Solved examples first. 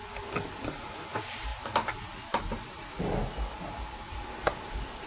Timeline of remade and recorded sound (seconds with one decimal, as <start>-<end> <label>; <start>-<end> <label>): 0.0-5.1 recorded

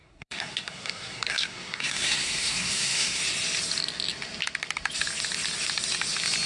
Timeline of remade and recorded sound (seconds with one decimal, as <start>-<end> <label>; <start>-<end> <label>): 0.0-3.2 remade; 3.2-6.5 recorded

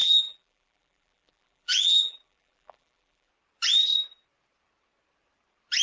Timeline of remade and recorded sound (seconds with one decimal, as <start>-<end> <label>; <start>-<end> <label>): 0.0-3.3 remade; 3.3-5.8 recorded

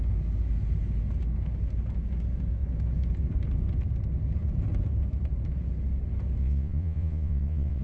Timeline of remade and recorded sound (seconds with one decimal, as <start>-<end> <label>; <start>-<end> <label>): 0.0-6.4 recorded; 6.4-7.8 remade

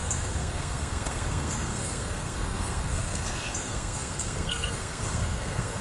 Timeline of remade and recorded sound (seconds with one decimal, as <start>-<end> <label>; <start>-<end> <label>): 0.0-5.8 remade

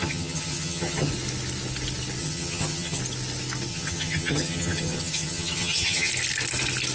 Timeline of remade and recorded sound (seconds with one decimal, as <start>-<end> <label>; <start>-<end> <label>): 0.0-1.1 remade; 1.1-2.2 recorded; 2.2-3.0 remade; 3.0-3.7 recorded; 3.7-6.1 remade; 6.1-6.9 recorded

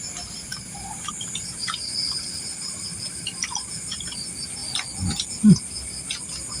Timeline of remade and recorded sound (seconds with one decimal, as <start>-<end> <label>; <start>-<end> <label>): 0.0-0.5 recorded; 0.5-1.1 remade; 1.1-2.0 recorded; 2.0-4.0 remade; 4.0-6.6 recorded

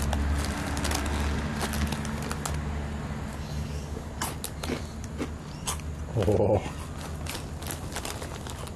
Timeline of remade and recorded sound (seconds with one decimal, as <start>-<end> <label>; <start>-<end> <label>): 0.0-3.3 recorded; 3.3-4.1 remade; 4.1-8.8 recorded